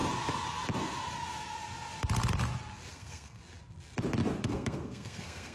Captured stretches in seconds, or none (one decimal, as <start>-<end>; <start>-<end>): 0.0-2.9; 3.4-4.4